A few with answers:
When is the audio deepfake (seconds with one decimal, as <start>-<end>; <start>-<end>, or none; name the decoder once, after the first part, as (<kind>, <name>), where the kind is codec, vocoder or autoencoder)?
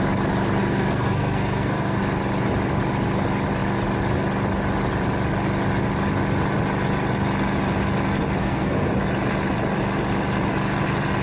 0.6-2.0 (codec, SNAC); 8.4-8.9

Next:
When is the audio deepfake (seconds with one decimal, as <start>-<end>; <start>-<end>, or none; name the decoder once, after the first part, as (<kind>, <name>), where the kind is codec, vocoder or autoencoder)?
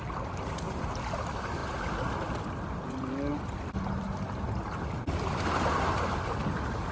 none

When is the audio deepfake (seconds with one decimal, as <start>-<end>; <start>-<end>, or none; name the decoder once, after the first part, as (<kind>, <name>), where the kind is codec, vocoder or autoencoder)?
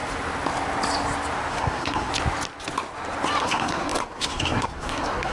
1.5-2.1 (codec, SNAC); 3.4-5.3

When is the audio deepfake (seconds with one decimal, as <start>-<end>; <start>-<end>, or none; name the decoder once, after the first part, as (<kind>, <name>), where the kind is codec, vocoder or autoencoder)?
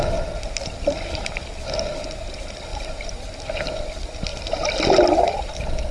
none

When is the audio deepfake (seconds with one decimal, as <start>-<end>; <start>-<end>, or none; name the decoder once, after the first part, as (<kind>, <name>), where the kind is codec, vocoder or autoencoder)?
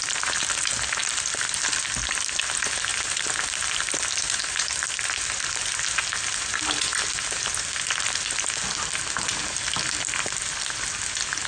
1.0-2.3 (vocoder, BigVGAN v2); 2.9-5.1; 6.9-8.6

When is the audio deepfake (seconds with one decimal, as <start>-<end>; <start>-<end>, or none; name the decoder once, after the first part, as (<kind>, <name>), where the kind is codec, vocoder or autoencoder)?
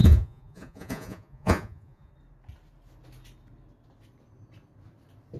0.0-2.1 (vocoder, Vocos)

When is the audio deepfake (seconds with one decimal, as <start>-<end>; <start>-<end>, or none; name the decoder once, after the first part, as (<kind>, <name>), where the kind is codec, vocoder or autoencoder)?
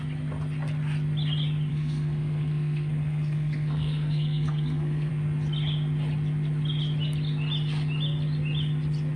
1.7-5.1 (codec, SNAC)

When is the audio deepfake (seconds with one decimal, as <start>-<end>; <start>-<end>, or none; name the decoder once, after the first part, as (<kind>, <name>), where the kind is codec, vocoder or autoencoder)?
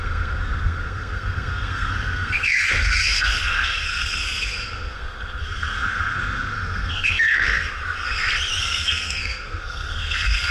0.0-7.8 (codec, SNAC); 8.6-10.5